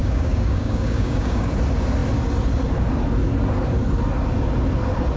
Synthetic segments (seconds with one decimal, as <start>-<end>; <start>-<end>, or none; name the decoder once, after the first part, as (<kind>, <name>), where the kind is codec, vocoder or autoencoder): 0.0-1.5 (codec, DAC)